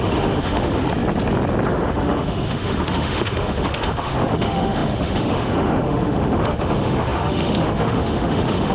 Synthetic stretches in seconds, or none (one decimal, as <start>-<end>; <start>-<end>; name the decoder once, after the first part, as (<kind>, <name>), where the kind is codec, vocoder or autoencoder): 0.0-0.8 (autoencoder, DAC-VAE); 1.7-8.7